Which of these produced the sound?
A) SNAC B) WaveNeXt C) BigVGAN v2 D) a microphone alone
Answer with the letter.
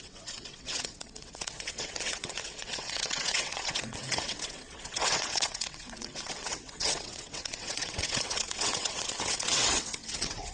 B